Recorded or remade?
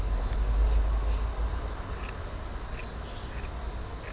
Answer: recorded